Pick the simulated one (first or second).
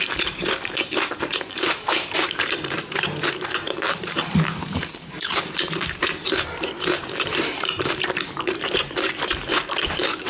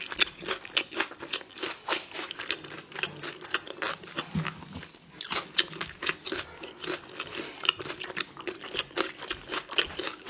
first